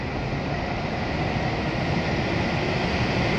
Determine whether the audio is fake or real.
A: real